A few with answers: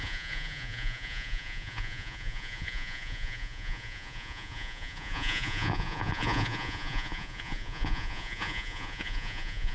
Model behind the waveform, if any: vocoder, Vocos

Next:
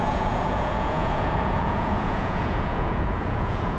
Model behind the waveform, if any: vocoder, Vocos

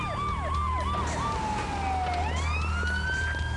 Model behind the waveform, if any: none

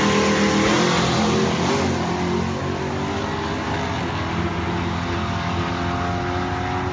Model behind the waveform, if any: none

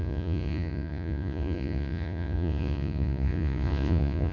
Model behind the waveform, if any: vocoder, Vocos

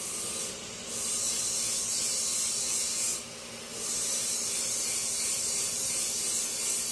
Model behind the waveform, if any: none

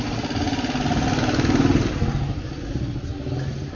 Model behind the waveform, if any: none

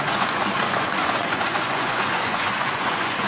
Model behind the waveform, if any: vocoder, Vocos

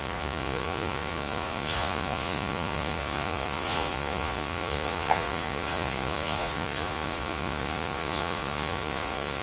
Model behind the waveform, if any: vocoder, Vocos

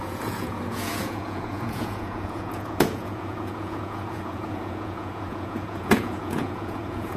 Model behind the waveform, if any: vocoder, Vocos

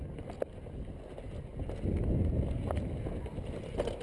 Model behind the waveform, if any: none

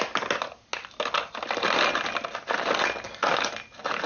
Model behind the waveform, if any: none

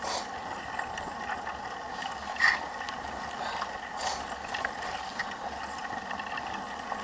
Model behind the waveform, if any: none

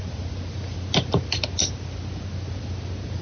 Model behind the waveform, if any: none